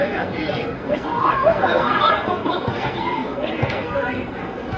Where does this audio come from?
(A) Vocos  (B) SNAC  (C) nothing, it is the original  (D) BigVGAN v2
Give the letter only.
B